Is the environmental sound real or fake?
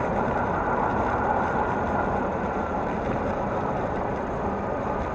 fake